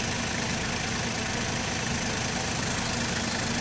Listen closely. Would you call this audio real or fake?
real